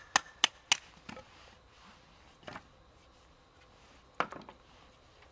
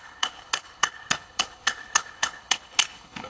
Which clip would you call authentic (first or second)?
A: first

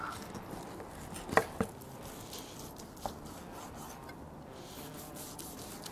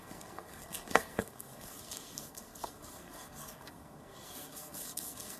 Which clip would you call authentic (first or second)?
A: first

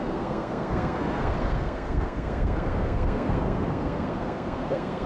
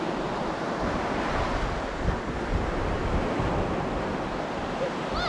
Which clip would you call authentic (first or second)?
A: second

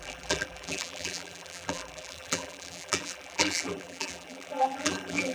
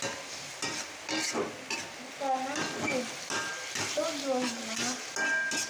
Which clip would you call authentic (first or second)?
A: second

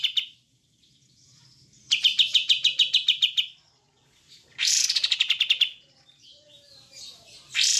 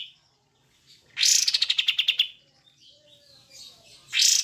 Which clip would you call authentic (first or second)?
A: second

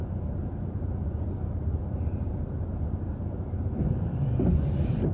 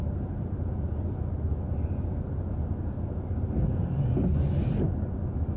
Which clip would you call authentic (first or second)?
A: second